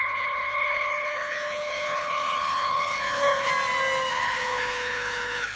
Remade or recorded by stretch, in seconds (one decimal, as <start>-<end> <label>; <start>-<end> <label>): 0.0-3.5 remade; 3.5-4.1 recorded; 4.1-5.6 remade